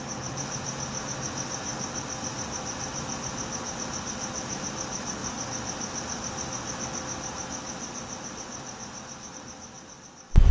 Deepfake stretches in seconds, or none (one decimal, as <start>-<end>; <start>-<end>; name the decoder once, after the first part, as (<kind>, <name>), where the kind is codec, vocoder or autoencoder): none